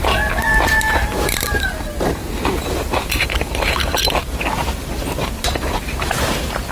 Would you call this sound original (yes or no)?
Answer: no